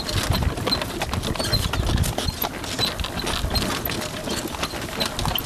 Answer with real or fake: real